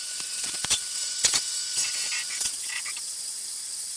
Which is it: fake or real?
fake